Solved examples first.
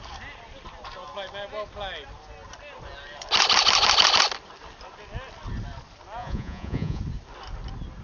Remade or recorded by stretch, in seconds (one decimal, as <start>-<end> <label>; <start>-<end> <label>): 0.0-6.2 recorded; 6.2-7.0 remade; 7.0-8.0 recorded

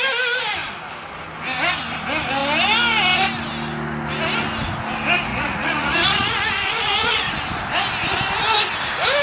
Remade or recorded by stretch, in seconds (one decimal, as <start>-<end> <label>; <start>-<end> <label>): 0.0-5.3 recorded; 5.3-7.3 remade; 7.3-9.2 recorded

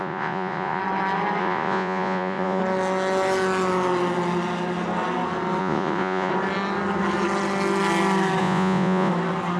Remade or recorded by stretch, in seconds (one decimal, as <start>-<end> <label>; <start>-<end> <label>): 0.0-0.8 remade; 0.8-1.4 recorded; 1.4-2.6 remade; 2.6-5.6 recorded; 5.6-6.3 remade; 6.3-8.4 recorded; 8.4-9.1 remade; 9.1-9.6 recorded